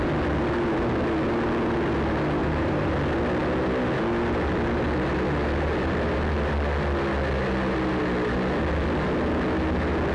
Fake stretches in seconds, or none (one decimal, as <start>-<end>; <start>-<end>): 2.4-2.9